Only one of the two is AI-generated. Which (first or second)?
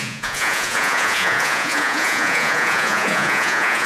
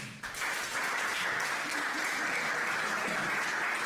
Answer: first